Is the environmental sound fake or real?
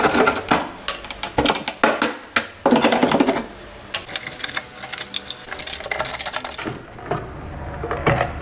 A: real